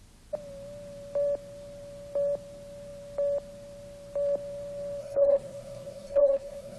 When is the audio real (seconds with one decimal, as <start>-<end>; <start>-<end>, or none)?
0.0-5.0